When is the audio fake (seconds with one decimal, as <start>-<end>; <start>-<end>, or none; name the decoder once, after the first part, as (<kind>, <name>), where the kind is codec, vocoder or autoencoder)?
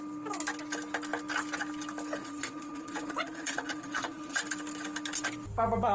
2.2-4.4 (vocoder, Vocos)